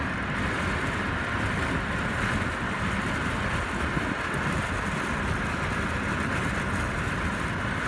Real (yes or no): yes